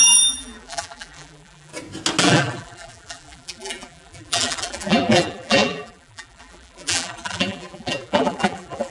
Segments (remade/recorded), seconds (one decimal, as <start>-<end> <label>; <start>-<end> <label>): 0.0-1.7 remade; 1.7-2.2 recorded; 2.2-8.9 remade